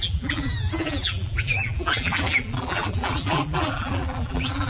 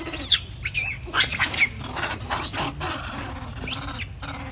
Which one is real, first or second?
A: second